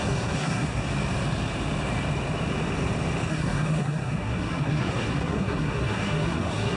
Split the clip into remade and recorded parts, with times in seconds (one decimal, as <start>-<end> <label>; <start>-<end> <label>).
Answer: 0.0-0.8 remade; 0.8-3.3 recorded; 3.3-6.8 remade